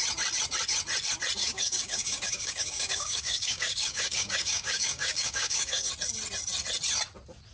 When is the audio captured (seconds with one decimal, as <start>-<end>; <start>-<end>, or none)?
0.0-1.4; 5.9-7.5